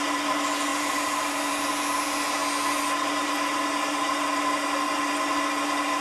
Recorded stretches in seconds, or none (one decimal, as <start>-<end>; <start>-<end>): 0.0-0.7; 1.5-6.0